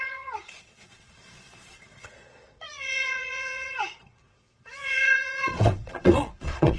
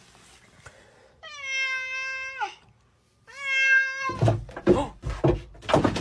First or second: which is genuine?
second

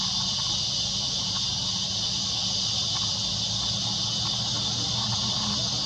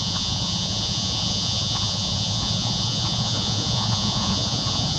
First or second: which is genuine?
first